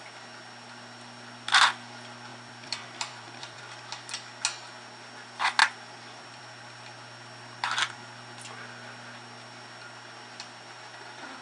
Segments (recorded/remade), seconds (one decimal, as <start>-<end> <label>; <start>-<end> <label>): 0.0-2.3 recorded; 2.3-3.6 remade; 3.6-11.4 recorded